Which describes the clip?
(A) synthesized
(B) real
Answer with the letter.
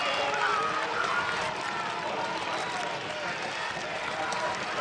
A